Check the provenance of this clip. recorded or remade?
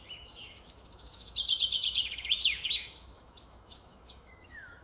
remade